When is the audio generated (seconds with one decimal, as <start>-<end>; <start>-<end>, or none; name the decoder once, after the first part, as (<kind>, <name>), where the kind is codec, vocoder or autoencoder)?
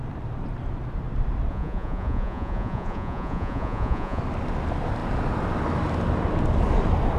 1.5-4.2 (vocoder, Vocos)